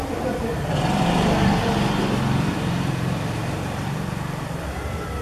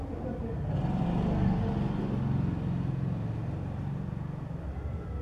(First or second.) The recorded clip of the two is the second